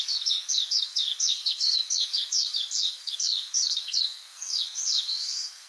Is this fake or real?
fake